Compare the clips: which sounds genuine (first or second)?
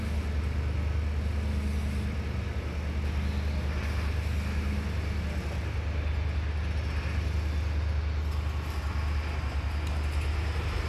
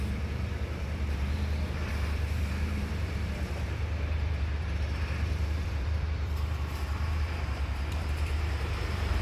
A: first